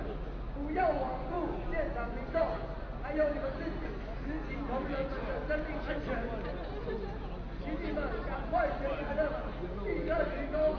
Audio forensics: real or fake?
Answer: real